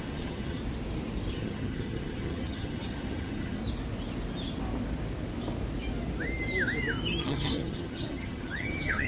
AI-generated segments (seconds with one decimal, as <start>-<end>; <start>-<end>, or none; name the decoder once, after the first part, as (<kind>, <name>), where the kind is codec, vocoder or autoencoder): 0.0-0.6 (vocoder, HiFi-GAN); 1.3-3.6; 7.2-9.1